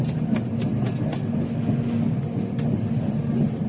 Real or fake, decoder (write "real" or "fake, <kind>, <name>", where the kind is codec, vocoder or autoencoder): real